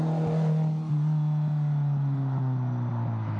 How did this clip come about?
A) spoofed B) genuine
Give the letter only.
B